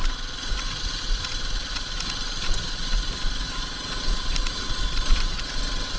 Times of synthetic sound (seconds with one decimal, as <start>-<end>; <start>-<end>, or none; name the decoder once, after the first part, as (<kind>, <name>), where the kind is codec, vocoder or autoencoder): none